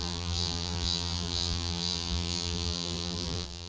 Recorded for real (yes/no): no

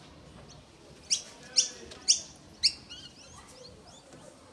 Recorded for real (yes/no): yes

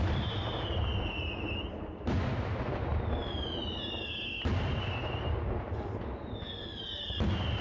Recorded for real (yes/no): yes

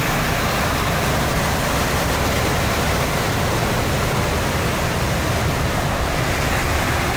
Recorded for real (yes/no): yes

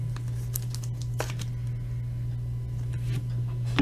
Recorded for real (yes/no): yes